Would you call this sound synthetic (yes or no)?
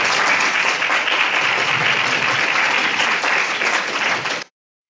yes